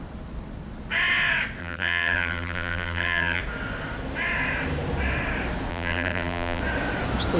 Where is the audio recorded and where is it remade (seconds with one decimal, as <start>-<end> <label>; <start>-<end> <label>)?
0.0-1.6 recorded; 1.6-3.4 remade; 3.4-5.7 recorded; 5.7-6.6 remade; 6.6-7.4 recorded